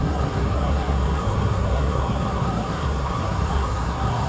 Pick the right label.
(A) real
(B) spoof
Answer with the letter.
B